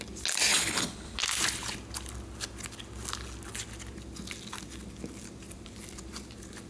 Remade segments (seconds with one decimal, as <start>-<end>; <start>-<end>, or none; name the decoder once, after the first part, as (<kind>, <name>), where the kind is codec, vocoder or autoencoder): 0.5-1.2 (codec, HILCodec)